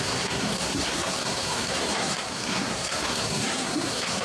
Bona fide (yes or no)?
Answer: no